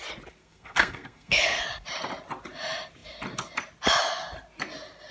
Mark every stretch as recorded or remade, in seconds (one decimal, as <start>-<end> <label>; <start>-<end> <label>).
0.0-0.4 recorded; 0.4-1.6 remade; 1.6-5.1 recorded